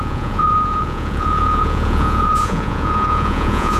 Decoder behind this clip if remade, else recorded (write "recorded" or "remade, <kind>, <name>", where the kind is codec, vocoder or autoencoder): remade, vocoder, Vocos